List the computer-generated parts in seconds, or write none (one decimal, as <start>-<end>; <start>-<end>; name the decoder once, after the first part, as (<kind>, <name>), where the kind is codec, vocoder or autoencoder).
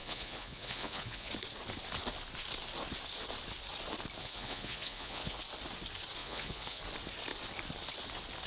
0.0-1.3 (vocoder, Vocos); 4.2-5.4; 6.2-6.8